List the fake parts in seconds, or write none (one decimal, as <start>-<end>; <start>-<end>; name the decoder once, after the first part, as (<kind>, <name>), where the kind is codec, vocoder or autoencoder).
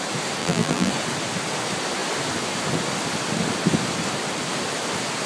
0.4-0.9 (vocoder, BigVGAN v2)